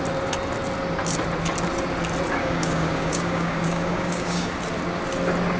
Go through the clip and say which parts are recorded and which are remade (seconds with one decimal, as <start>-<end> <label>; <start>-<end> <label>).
0.0-2.4 recorded; 2.4-4.5 remade; 4.5-5.6 recorded